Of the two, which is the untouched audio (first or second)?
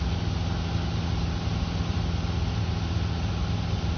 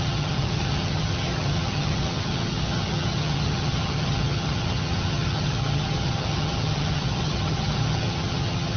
first